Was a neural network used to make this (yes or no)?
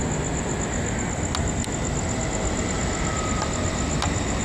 no